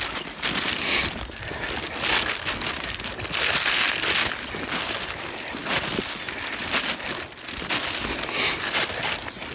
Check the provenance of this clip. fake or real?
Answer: real